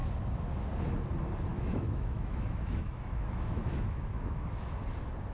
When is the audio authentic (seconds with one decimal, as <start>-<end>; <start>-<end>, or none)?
0.0-1.5; 4.7-5.3